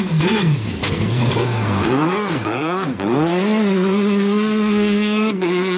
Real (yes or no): no